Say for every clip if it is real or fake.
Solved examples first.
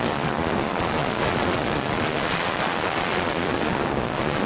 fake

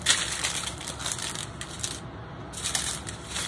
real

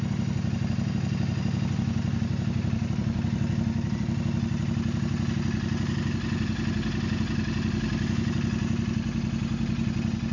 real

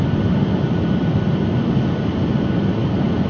real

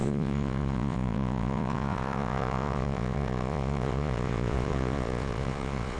fake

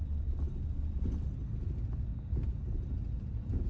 real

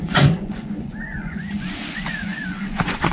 fake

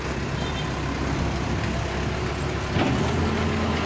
real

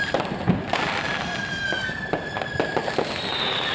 real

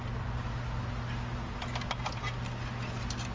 real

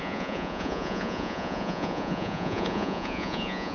fake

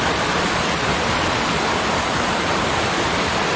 real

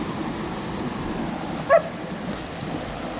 real